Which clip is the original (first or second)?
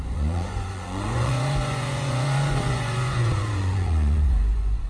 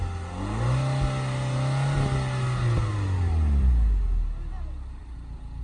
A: second